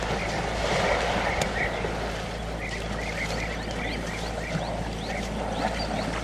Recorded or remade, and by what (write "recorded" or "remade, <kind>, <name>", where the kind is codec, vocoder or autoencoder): recorded